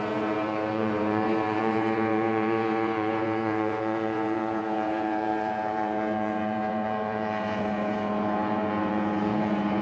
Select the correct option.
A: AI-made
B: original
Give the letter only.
A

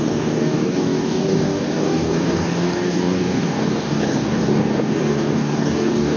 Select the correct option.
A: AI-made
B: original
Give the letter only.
A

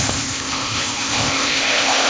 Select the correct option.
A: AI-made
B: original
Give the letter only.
A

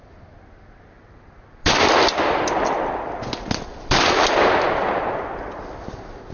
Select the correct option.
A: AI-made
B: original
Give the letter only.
B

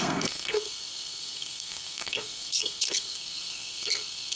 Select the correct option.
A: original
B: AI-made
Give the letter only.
B